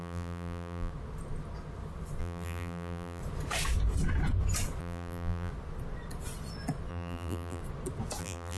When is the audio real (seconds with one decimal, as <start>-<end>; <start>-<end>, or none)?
0.9-2.2; 3.2-4.8; 5.5-6.9; 7.6-8.2